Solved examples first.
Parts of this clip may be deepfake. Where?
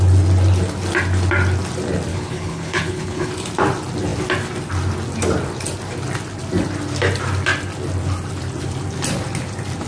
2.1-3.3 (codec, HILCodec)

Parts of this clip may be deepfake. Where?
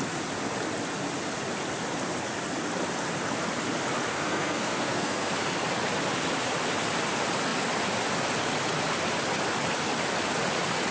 4.1-5.3 (codec, SNAC)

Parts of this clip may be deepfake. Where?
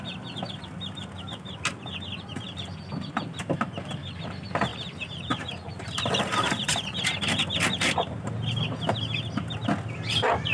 4.7-7.2 (vocoder, BigVGAN v2)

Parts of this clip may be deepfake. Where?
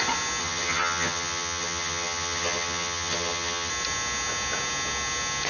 0.4-3.7 (vocoder, HiFi-GAN)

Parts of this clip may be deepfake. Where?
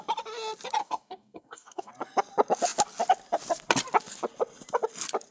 0.8-1.9 (codec, DAC)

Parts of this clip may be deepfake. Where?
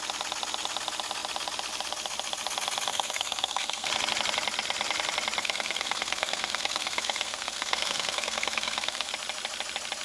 2.9-3.9 (codec, SNAC); 5.4-9.1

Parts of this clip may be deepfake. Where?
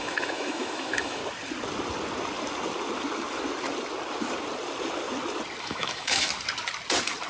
0.0-1.2 (autoencoder, DAC-VAE); 5.6-6.3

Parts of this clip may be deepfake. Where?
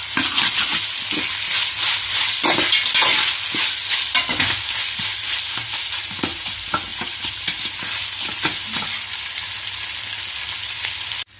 none